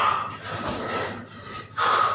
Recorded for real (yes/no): yes